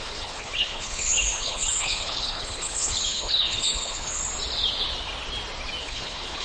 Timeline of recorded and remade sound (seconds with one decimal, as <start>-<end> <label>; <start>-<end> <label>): 0.0-4.2 remade; 4.2-5.8 recorded; 5.8-6.4 remade